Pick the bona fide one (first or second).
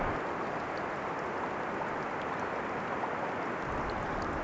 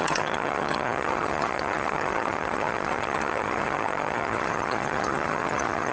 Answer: first